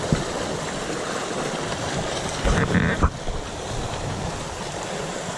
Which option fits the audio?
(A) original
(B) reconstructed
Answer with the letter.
A